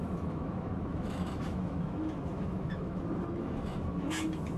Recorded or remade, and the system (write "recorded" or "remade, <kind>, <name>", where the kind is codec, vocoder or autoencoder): remade, autoencoder, DAC-VAE